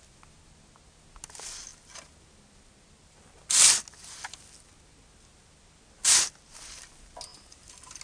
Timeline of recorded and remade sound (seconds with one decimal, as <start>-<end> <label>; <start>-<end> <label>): 0.0-7.3 recorded; 7.3-8.0 remade